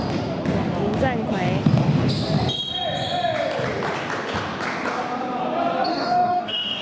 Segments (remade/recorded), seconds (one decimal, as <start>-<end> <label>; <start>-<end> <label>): 0.0-5.9 recorded; 5.9-6.8 remade